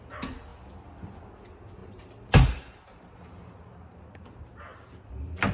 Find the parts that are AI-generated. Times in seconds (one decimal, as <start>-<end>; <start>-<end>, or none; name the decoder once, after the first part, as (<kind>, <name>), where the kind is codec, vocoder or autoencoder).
none